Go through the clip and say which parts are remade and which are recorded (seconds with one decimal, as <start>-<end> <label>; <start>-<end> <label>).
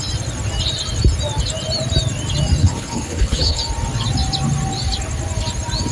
0.0-2.6 recorded; 2.6-3.6 remade; 3.6-5.9 recorded